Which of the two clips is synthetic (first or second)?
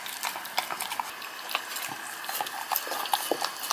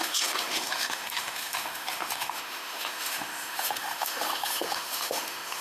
second